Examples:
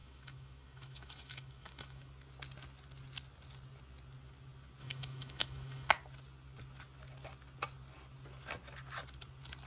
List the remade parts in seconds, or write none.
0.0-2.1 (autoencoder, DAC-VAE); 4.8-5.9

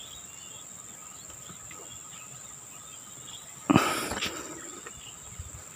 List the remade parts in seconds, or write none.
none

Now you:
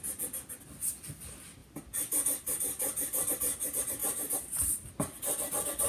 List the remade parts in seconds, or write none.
4.0-4.9 (vocoder, BigVGAN v2)